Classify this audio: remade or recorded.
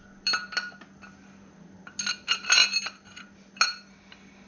recorded